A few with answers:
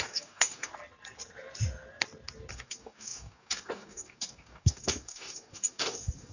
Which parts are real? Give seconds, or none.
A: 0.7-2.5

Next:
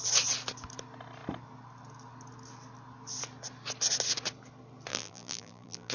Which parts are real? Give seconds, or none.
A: 0.0-4.9

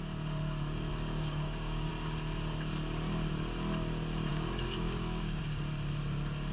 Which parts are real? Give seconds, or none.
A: 0.0-0.9; 1.9-4.3; 5.4-6.5

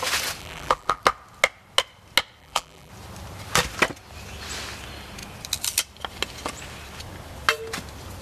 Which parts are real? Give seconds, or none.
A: 0.0-0.4; 1.0-2.4; 2.9-8.2

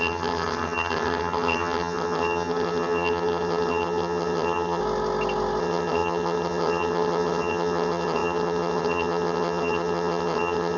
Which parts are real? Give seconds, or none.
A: 4.8-5.6